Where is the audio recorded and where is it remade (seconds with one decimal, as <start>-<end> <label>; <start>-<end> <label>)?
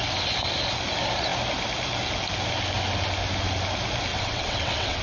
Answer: 0.0-4.1 recorded; 4.1-5.0 remade